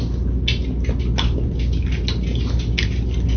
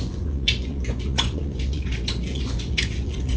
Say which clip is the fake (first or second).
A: second